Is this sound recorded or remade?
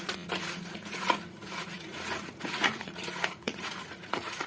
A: remade